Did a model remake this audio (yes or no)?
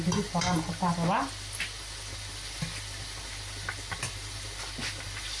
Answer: no